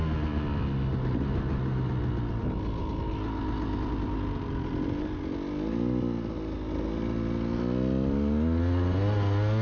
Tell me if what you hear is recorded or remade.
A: recorded